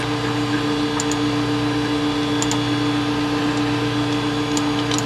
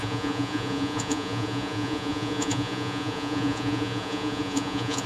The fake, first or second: second